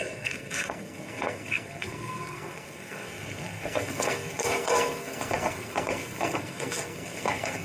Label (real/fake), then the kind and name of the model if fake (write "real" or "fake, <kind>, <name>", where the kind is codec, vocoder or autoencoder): fake, codec, SNAC